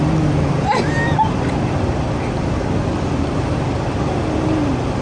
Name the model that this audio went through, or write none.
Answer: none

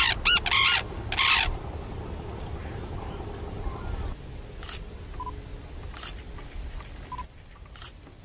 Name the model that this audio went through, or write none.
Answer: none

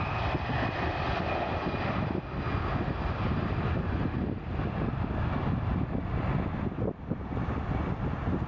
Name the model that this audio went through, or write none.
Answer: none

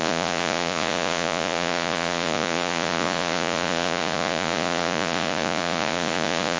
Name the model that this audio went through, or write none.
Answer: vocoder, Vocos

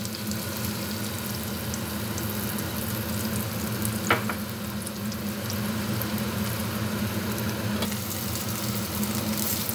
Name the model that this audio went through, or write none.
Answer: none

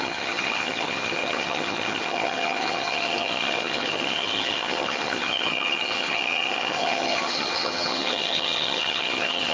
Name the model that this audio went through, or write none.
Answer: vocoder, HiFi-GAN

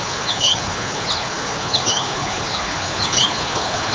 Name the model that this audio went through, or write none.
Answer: codec, HILCodec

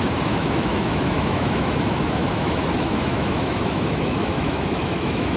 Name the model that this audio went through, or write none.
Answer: autoencoder, DAC-VAE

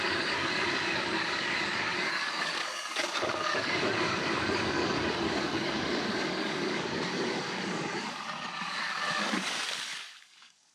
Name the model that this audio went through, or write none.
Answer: codec, DAC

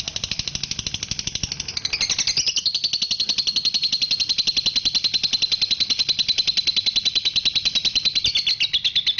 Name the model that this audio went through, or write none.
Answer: none